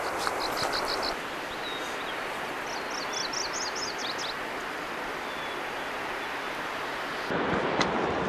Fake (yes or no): no